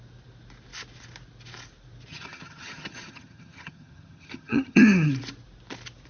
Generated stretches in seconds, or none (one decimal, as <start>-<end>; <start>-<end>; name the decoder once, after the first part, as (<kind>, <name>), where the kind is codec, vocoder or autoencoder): 2.1-5.1 (vocoder, HiFi-GAN)